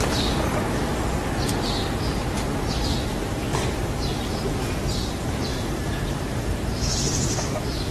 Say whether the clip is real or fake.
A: real